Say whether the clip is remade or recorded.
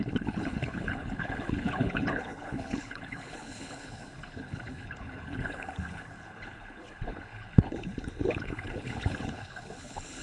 remade